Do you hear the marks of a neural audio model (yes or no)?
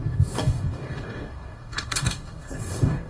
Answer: yes